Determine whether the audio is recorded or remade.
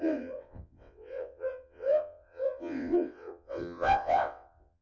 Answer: remade